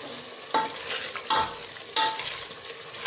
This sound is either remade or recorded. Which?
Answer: recorded